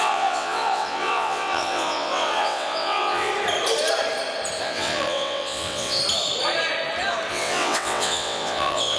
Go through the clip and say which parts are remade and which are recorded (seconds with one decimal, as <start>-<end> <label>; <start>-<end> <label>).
0.0-3.3 remade; 3.3-4.6 recorded; 4.6-6.0 remade; 6.0-7.3 recorded; 7.3-9.0 remade